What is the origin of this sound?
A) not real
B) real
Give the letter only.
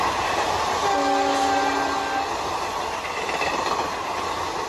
B